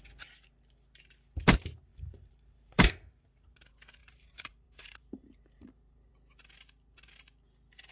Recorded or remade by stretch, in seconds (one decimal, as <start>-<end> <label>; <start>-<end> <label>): 0.0-1.9 recorded; 1.9-2.9 remade; 2.9-4.0 recorded; 4.0-6.1 remade; 6.1-7.9 recorded